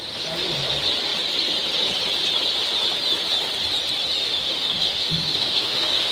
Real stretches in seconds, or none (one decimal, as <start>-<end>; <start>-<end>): 0.0-4.2